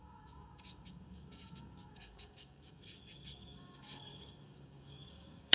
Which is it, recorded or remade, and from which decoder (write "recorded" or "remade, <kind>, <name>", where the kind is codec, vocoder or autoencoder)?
remade, codec, DAC